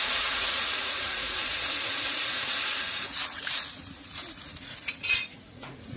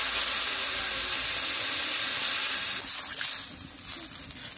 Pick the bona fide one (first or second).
second